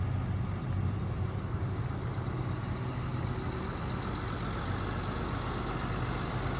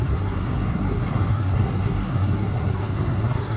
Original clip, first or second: first